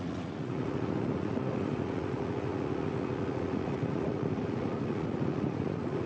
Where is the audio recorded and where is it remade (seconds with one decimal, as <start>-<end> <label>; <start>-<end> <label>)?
0.0-6.1 remade